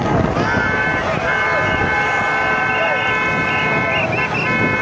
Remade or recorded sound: recorded